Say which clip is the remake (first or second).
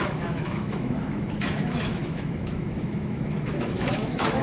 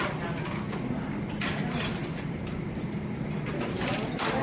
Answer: first